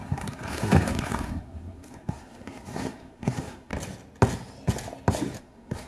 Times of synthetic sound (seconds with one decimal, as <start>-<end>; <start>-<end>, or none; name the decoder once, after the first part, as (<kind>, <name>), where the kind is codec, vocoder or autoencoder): 0.0-3.7 (codec, SNAC); 5.4-5.9

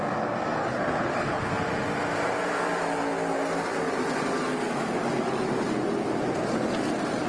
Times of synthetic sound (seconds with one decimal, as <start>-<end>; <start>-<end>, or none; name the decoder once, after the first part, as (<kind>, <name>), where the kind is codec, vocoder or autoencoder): 0.6-1.5 (codec, HILCodec)

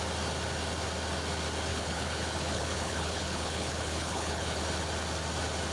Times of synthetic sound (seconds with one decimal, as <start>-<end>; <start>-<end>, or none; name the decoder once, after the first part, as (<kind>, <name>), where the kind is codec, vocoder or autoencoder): 1.7-4.6 (codec, HILCodec)

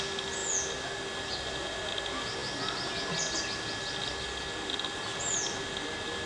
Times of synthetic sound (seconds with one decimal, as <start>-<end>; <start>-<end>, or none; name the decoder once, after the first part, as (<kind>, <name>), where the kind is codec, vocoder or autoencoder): none

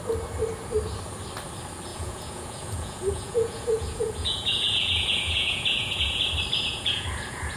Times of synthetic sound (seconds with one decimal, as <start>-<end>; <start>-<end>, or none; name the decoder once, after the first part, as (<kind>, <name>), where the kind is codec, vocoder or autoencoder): 1.9-6.2 (vocoder, Vocos); 6.7-7.6

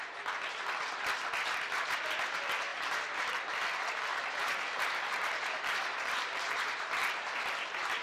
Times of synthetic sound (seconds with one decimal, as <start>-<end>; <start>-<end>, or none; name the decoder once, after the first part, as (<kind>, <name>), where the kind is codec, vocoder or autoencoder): 2.7-3.3 (vocoder, BigVGAN v2); 4.4-6.9